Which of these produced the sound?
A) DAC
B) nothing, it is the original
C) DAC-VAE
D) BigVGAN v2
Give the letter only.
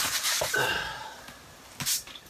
D